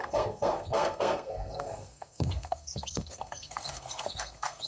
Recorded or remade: remade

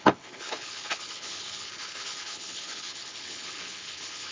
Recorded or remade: remade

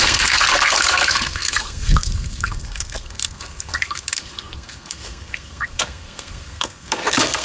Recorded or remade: remade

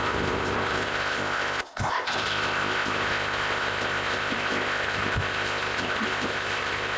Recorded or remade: remade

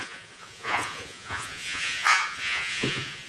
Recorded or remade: remade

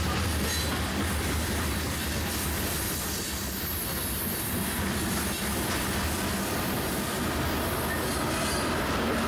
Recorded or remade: recorded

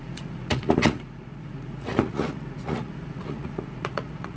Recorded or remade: remade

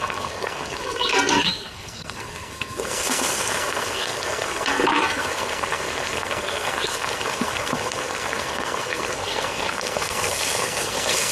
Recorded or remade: remade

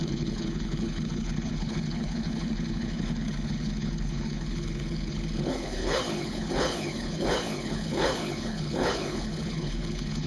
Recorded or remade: remade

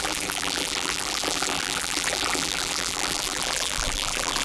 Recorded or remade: remade